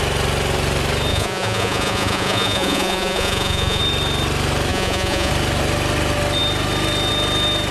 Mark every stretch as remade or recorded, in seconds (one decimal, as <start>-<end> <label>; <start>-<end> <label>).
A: 0.0-1.1 recorded; 1.1-3.8 remade; 3.8-4.7 recorded; 4.7-5.3 remade; 5.3-7.7 recorded